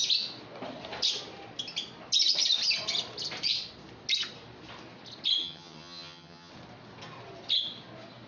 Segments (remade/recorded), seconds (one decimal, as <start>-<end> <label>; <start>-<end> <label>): 0.0-5.4 recorded; 5.4-6.5 remade; 6.5-8.3 recorded